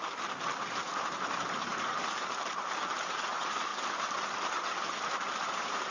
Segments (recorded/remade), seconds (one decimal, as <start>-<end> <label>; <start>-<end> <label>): 0.0-0.8 recorded; 0.8-3.7 remade; 3.7-5.5 recorded; 5.5-5.9 remade